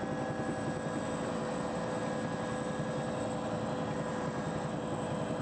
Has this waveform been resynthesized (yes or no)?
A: no